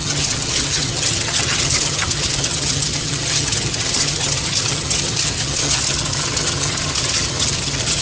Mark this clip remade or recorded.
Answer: remade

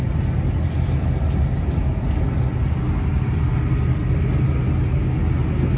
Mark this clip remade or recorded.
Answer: recorded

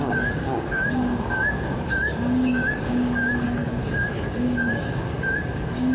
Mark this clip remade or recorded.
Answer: remade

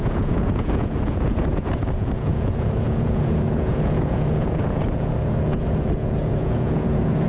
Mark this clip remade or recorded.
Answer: remade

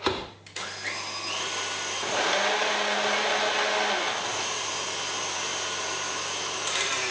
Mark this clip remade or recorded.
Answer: recorded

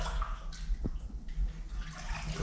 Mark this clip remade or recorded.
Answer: recorded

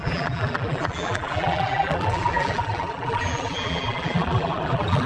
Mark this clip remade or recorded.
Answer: remade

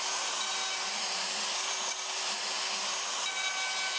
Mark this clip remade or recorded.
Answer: recorded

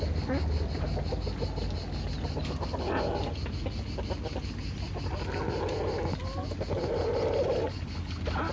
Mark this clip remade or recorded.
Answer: recorded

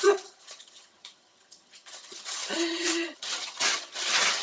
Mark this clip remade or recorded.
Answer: remade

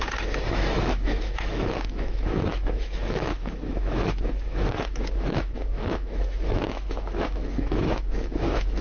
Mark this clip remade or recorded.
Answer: remade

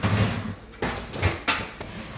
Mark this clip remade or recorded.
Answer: recorded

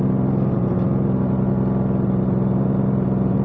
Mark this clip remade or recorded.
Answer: recorded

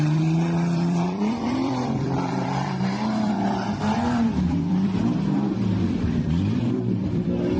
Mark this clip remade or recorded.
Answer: remade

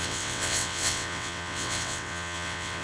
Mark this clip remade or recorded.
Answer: remade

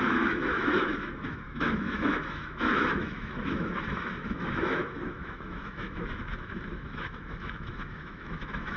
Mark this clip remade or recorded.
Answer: remade